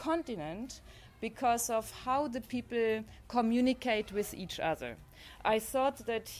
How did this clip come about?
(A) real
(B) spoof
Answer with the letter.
A